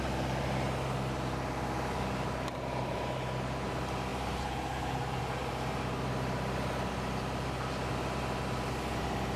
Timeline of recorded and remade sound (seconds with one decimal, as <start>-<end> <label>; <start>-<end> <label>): 0.0-9.4 recorded